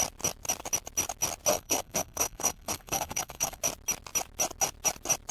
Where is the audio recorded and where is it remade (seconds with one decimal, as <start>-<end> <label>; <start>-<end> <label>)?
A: 0.0-1.5 recorded; 1.5-3.6 remade; 3.6-5.3 recorded